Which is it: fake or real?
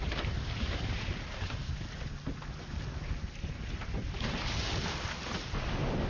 real